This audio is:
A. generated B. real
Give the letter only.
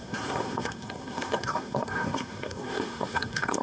A